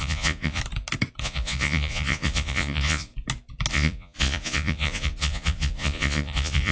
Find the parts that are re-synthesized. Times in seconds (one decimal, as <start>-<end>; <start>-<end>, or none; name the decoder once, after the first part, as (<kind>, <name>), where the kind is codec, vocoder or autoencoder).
0.0-0.6 (vocoder, Vocos); 1.2-3.1; 3.7-6.7